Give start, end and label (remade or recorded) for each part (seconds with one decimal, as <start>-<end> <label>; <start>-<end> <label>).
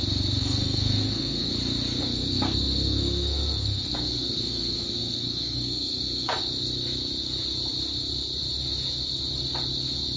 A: 0.0-0.4 recorded; 0.4-1.5 remade; 1.5-2.0 recorded; 2.0-6.4 remade; 6.4-10.2 recorded